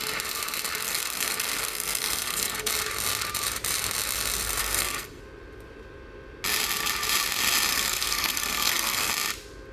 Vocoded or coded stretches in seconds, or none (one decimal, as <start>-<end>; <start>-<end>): 0.8-2.7; 4.6-5.2; 7.7-9.1